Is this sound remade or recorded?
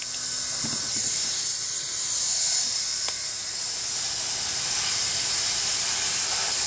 recorded